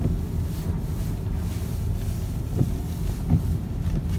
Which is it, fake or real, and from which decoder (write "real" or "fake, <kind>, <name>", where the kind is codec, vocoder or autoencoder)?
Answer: real